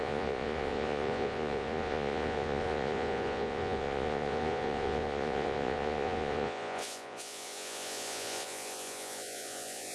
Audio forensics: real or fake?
fake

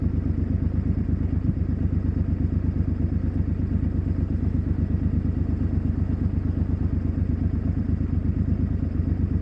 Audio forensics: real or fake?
real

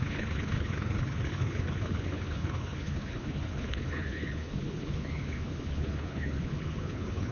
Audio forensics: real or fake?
fake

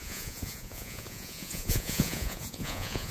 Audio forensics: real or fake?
fake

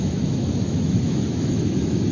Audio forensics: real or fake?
fake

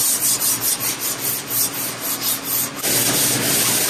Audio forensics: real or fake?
real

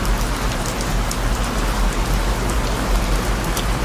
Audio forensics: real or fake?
real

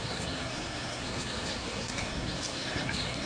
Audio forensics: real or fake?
fake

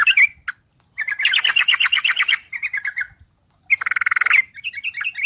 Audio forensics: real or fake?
real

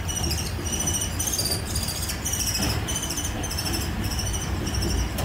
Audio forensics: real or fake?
fake